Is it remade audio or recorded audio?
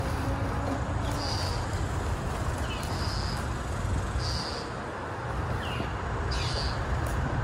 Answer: recorded